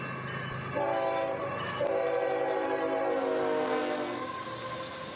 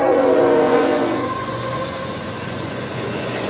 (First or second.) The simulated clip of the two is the second